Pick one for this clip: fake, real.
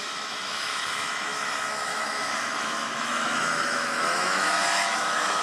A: fake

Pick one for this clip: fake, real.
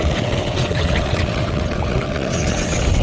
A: fake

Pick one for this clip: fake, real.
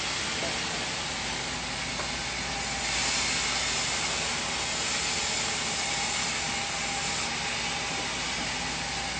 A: real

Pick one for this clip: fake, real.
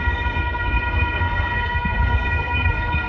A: fake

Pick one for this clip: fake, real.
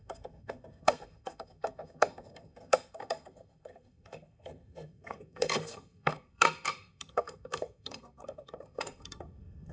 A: fake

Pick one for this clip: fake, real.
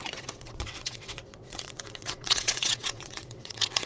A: fake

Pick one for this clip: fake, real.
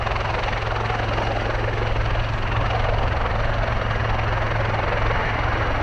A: real